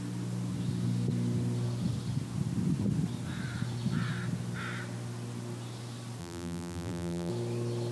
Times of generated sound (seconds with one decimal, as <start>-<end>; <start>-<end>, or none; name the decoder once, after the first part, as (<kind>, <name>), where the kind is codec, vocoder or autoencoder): 6.2-7.3 (vocoder, BigVGAN v2)